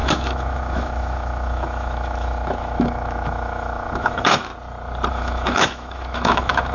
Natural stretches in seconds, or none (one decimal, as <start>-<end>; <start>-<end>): 4.5-5.1